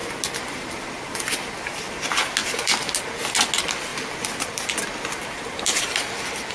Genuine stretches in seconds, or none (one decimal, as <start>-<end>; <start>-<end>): 0.0-3.9; 5.1-6.5